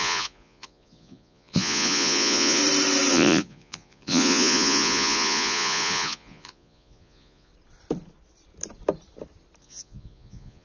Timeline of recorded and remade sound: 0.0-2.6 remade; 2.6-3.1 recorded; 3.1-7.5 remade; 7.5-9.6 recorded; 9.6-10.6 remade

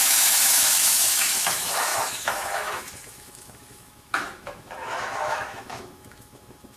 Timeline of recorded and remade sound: 0.0-6.8 remade

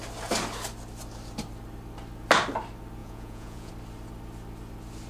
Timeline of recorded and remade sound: 0.0-3.0 recorded; 3.0-3.7 remade; 3.7-5.1 recorded

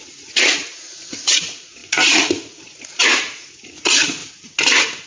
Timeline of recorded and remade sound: 0.0-4.2 remade; 4.2-5.1 recorded

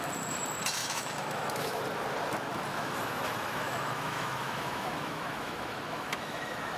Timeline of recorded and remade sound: 0.0-0.8 recorded; 0.8-1.8 remade; 1.8-2.7 recorded; 2.7-6.8 remade